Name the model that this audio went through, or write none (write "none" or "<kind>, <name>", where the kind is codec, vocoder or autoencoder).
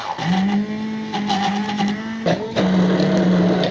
none